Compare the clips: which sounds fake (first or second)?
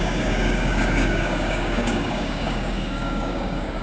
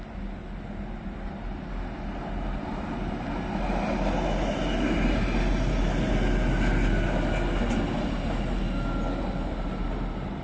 first